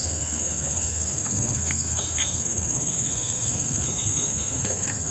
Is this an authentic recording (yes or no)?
no